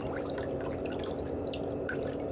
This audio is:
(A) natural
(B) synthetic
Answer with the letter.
B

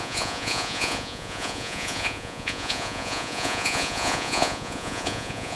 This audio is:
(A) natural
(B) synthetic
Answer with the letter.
B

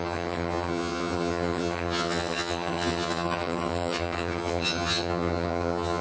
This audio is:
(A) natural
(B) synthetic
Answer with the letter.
B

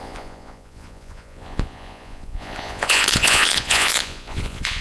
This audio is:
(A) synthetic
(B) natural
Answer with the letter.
A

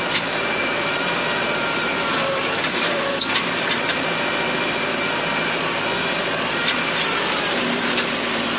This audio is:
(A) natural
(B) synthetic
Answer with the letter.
B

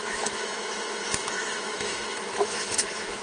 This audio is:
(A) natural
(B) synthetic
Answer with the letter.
B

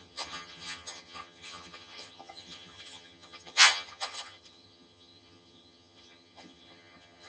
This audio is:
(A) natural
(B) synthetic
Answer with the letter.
B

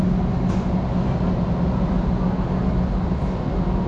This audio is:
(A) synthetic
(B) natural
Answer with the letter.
B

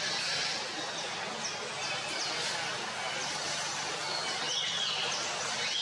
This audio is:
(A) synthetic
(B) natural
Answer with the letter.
B